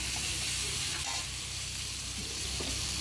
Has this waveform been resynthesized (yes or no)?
yes